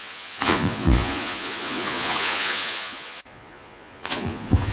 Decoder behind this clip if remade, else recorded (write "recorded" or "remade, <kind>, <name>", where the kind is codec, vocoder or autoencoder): remade, vocoder, Vocos